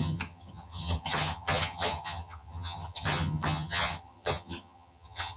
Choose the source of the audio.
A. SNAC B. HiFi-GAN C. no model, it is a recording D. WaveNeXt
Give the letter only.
B